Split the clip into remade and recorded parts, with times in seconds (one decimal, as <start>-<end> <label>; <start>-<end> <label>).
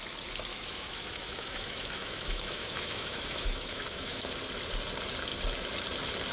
0.0-0.5 recorded; 0.5-4.3 remade; 4.3-6.3 recorded